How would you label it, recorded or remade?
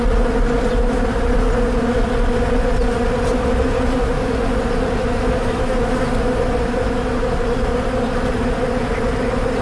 recorded